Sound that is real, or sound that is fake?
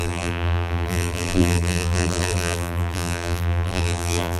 fake